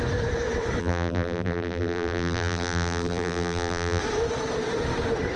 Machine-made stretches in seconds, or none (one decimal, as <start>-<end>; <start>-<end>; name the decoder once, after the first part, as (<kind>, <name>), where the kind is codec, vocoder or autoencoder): 0.8-4.0 (vocoder, BigVGAN v2)